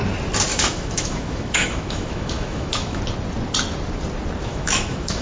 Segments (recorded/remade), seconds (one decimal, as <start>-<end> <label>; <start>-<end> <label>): 0.0-0.5 recorded; 0.5-3.0 remade; 3.0-4.4 recorded; 4.4-5.2 remade

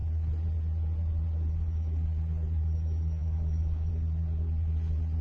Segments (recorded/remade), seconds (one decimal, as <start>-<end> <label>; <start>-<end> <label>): 0.0-3.2 recorded; 3.2-3.9 remade; 3.9-5.2 recorded

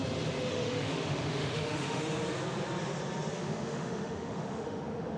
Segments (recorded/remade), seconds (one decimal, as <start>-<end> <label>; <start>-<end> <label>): 0.0-0.5 recorded; 0.5-2.0 remade; 2.0-3.3 recorded; 3.3-5.2 remade

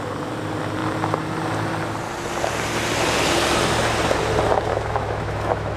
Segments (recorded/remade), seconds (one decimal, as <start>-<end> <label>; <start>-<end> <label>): 0.0-4.7 recorded; 4.7-5.8 remade

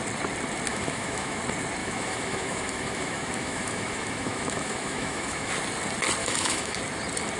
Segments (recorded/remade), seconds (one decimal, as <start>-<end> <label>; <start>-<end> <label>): 0.0-0.7 recorded; 0.7-1.4 remade; 1.4-1.8 recorded; 1.8-5.5 remade; 5.5-6.2 recorded; 6.2-6.8 remade; 6.8-7.4 recorded

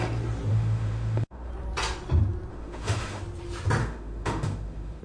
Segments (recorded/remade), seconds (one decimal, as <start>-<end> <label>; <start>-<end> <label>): 0.0-0.5 recorded; 0.5-1.5 remade; 1.5-2.5 recorded; 2.5-3.2 remade; 3.2-3.8 recorded; 3.8-5.0 remade

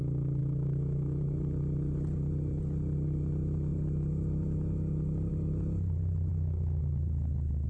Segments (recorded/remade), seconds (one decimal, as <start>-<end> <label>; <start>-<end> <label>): 0.0-0.4 recorded; 0.4-1.2 remade; 1.2-6.3 recorded; 6.3-6.8 remade; 6.8-7.7 recorded